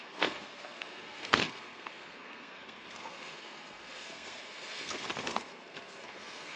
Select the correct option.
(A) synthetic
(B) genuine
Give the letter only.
A